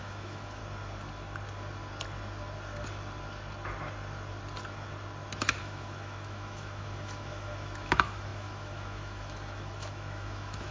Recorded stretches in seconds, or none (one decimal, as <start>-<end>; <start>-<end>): 0.6-5.6